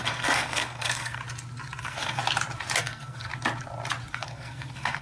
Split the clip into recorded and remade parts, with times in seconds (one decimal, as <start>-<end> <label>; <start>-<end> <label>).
0.0-1.2 remade; 1.2-1.8 recorded; 1.8-2.2 remade; 2.2-2.8 recorded; 2.8-3.3 remade; 3.3-4.1 recorded; 4.1-5.0 remade